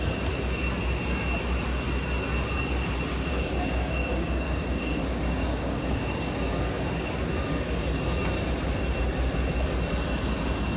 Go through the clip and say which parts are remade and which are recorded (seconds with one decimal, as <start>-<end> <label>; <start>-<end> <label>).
0.0-3.1 recorded; 3.1-7.1 remade; 7.1-10.8 recorded